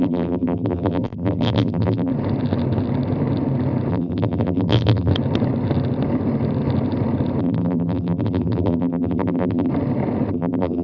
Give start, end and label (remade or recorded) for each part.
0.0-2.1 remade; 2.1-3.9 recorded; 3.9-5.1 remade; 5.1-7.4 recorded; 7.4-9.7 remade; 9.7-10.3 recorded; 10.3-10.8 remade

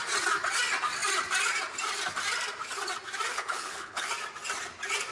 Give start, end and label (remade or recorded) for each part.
0.0-3.3 recorded; 3.3-4.1 remade; 4.1-5.1 recorded

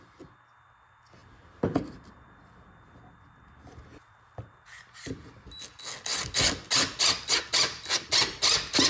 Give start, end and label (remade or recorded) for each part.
0.0-8.9 recorded